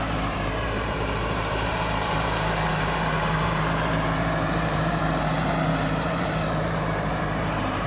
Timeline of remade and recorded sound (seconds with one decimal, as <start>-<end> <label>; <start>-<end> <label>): 0.0-7.9 remade